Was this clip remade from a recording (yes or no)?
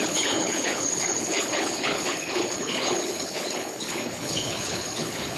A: yes